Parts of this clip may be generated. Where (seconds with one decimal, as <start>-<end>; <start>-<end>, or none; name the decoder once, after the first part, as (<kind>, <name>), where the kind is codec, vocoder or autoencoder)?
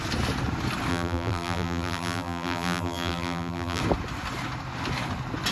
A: 0.9-3.8 (vocoder, BigVGAN v2)